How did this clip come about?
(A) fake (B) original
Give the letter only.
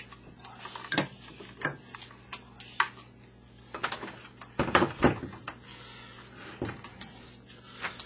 B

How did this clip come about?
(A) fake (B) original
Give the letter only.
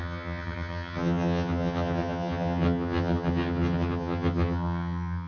A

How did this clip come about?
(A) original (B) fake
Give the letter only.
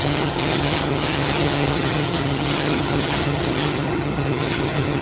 B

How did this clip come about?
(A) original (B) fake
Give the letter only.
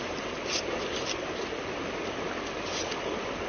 A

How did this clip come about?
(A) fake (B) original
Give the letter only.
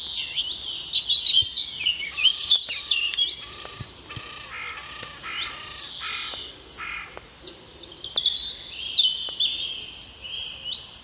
B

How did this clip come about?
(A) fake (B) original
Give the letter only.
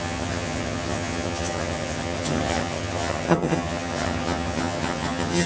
A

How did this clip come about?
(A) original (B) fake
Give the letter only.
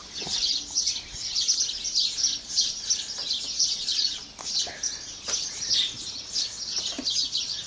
A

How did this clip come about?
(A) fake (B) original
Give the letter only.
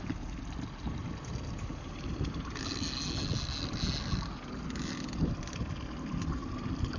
B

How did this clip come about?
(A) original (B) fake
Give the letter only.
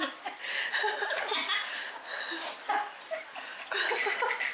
A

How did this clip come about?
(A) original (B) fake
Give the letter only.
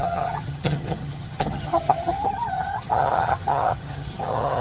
B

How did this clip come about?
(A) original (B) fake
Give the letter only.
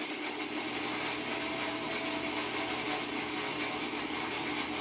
A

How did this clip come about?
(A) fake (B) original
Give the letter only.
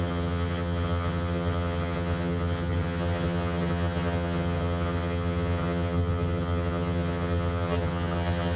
A